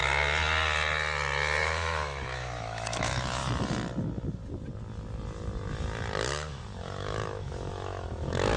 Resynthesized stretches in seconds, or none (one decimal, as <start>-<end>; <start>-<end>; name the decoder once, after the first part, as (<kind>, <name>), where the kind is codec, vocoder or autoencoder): 1.6-3.4 (autoencoder, DAC-VAE); 6.5-8.6